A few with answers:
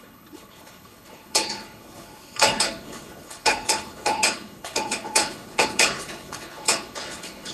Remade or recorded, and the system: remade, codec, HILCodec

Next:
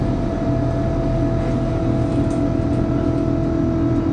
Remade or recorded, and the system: recorded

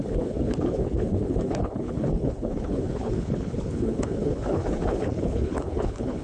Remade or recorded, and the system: remade, codec, HILCodec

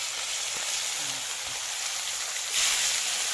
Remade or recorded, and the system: recorded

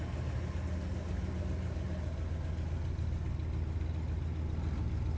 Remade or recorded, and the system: recorded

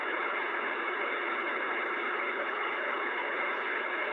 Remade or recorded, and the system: remade, codec, HILCodec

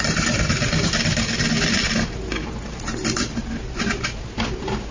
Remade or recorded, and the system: recorded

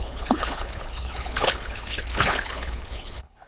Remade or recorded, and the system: remade, codec, HILCodec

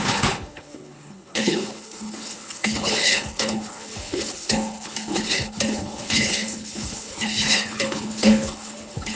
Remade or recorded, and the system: remade, codec, HILCodec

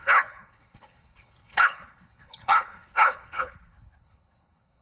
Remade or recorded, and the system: remade, codec, HILCodec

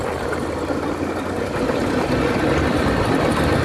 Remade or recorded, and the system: recorded